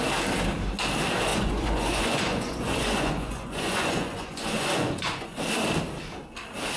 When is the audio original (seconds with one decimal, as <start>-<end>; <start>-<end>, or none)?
0.0-1.3; 5.4-6.8